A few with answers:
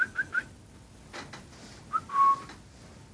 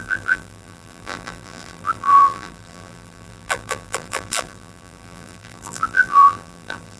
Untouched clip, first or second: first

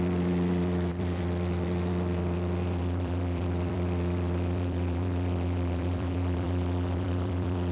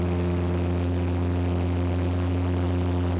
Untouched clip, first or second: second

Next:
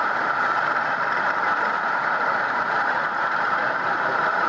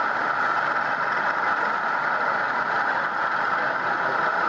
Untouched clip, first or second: second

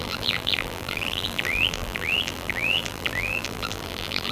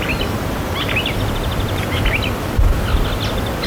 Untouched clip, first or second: second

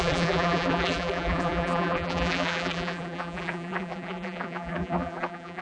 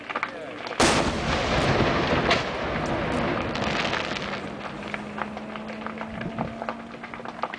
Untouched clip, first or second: second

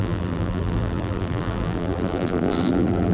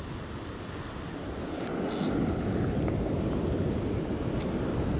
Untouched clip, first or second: second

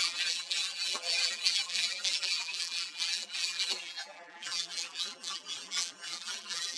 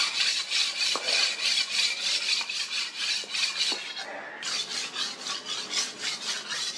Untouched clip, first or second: second